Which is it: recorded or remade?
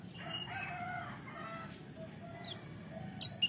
recorded